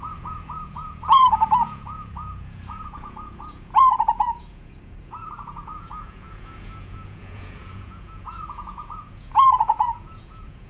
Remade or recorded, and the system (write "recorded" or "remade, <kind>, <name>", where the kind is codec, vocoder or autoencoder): remade, vocoder, Vocos